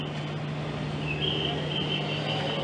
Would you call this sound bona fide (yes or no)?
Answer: yes